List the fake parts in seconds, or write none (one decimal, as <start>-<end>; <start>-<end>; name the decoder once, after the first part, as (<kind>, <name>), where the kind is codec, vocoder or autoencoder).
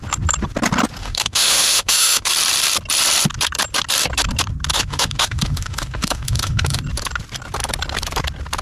1.0-2.3 (autoencoder, DAC-VAE); 4.7-6.8